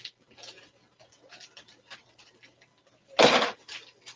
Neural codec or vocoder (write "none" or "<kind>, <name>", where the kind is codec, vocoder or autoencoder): vocoder, BigVGAN v2